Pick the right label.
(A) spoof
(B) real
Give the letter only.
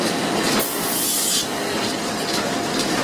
B